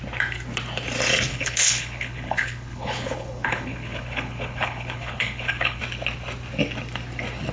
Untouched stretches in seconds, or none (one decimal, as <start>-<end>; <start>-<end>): 0.0-1.3; 5.8-7.5